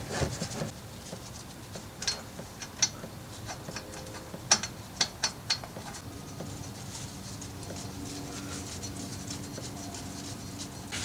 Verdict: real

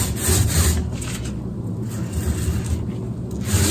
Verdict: real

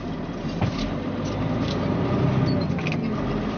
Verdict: real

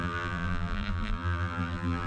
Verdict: fake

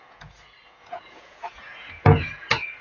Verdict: fake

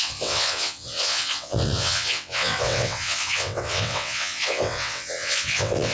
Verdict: fake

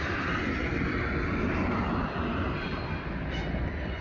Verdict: real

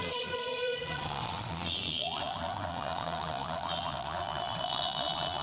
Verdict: fake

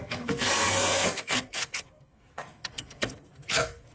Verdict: fake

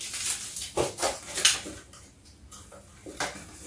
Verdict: real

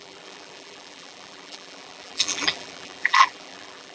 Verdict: fake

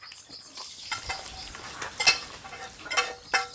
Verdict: real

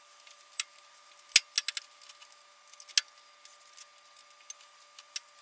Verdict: real